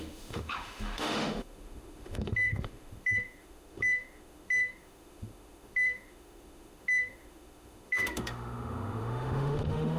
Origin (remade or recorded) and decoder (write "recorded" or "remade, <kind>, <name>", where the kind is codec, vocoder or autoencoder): remade, autoencoder, DAC-VAE